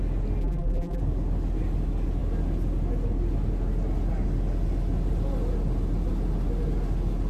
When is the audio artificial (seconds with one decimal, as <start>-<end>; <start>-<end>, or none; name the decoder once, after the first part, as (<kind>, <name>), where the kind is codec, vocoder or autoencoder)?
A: 0.4-1.0 (vocoder, BigVGAN v2)